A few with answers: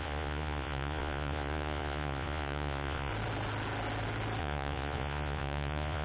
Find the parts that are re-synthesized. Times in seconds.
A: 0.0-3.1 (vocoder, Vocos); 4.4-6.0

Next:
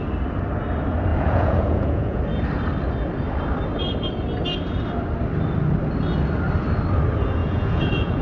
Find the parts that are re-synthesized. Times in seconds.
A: 1.1-2.2 (vocoder, Vocos); 7.4-8.2

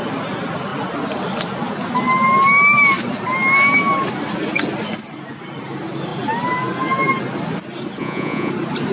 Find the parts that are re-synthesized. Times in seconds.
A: 8.0-8.5 (vocoder, Vocos)

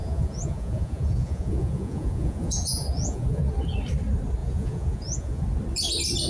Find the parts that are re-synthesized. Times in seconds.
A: 0.0-3.5 (vocoder, Vocos); 4.4-5.4

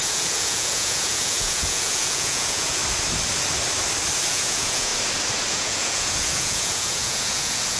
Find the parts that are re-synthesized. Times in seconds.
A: 0.0-2.8 (vocoder, Vocos); 4.3-4.9; 5.5-7.8

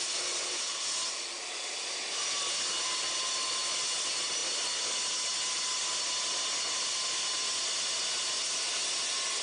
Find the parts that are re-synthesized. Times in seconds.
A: none

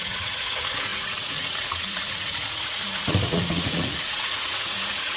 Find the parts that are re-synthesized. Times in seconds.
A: 0.0-5.2 (vocoder, Vocos)

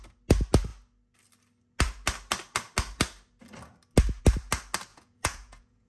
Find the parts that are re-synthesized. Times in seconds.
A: 4.9-5.9 (vocoder, Vocos)